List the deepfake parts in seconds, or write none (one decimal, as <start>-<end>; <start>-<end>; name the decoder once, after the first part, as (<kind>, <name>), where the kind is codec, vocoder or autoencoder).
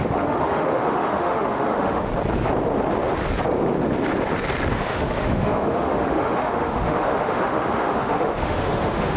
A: 0.0-2.1 (autoencoder, DAC-VAE); 4.7-9.2